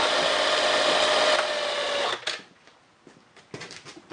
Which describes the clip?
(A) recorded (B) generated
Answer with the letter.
A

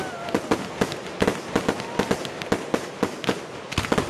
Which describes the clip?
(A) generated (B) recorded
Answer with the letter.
B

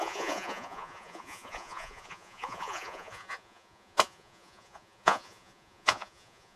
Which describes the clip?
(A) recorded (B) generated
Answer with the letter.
B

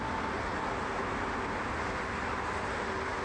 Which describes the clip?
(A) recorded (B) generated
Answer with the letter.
A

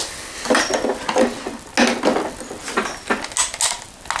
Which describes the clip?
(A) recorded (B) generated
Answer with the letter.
A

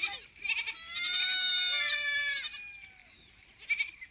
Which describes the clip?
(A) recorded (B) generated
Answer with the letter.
A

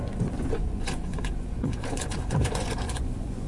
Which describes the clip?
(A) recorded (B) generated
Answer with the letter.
B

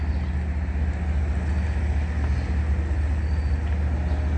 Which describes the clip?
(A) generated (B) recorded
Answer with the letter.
B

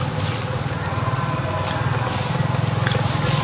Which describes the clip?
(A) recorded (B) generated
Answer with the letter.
A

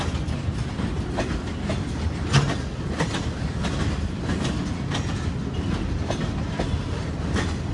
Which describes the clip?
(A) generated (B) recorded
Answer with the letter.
B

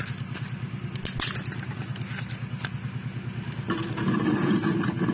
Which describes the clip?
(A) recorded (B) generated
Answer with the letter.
A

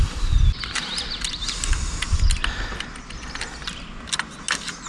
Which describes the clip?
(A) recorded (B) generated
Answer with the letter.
A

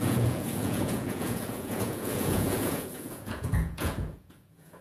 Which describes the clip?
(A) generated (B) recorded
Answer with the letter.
A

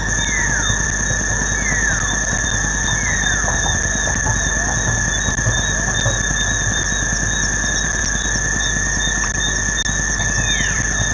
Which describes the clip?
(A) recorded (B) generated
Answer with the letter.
A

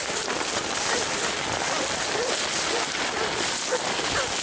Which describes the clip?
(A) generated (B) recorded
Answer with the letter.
B